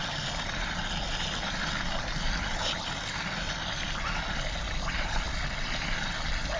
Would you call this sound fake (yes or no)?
no